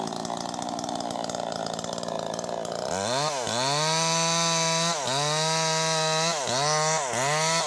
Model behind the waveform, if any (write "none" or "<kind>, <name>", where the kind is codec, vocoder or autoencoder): none